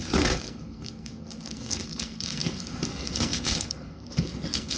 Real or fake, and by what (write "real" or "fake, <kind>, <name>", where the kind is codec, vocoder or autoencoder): fake, codec, SNAC